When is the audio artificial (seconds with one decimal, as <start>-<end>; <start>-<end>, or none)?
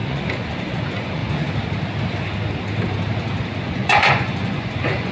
0.0-1.2; 3.6-5.1